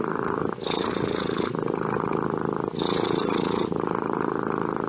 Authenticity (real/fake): real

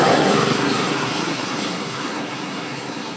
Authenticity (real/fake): fake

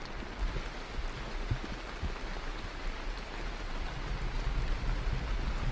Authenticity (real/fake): real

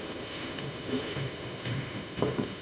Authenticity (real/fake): fake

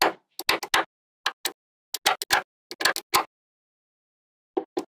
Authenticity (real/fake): real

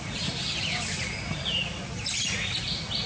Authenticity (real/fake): real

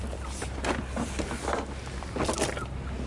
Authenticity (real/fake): real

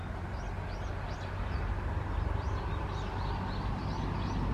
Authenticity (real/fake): real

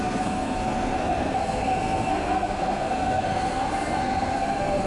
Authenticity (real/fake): fake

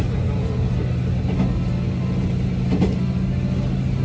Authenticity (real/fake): real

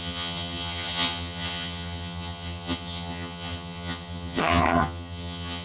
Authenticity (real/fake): fake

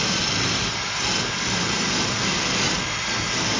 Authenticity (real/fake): real